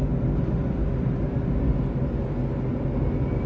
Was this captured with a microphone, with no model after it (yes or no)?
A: yes